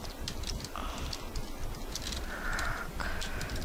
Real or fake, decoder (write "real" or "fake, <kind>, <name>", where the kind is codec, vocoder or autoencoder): fake, vocoder, BigVGAN v2